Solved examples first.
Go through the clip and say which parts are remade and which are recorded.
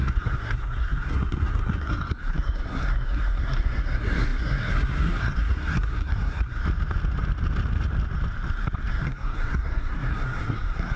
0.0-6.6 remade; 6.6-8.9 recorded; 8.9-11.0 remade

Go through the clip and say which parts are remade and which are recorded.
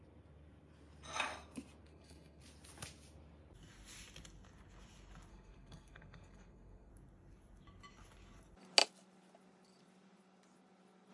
0.0-1.9 recorded; 1.9-2.4 remade; 2.4-5.3 recorded; 5.3-6.9 remade; 6.9-11.1 recorded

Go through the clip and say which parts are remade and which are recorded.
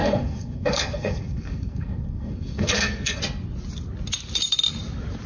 0.0-3.2 remade; 3.2-5.3 recorded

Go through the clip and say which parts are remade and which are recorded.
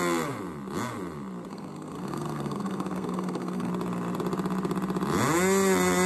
0.0-1.5 recorded; 1.5-3.7 remade; 3.7-6.1 recorded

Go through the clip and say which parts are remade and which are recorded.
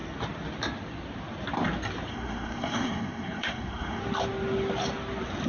0.0-2.1 recorded; 2.1-4.0 remade; 4.0-5.5 recorded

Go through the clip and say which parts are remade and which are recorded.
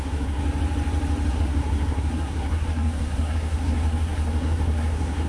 0.0-0.4 remade; 0.4-1.3 recorded; 1.3-5.3 remade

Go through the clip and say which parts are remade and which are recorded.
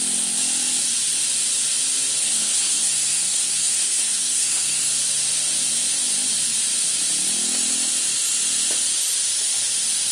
0.0-2.2 recorded; 2.2-4.8 remade; 4.8-10.1 recorded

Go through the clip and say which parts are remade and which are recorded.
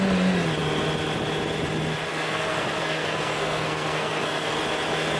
0.0-2.1 recorded; 2.1-4.6 remade; 4.6-5.2 recorded